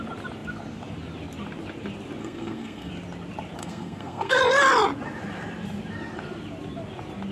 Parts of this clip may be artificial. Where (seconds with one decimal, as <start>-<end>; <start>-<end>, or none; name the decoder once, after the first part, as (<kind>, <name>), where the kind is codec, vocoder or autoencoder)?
2.2-2.9 (codec, SNAC); 3.6-4.4